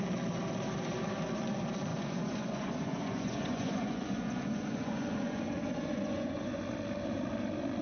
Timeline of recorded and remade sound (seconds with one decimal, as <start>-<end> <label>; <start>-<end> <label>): 0.0-1.9 recorded; 1.9-6.6 remade; 6.6-7.8 recorded